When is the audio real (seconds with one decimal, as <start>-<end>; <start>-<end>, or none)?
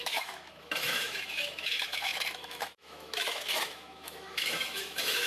none